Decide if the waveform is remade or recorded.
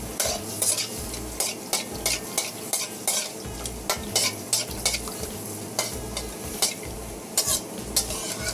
recorded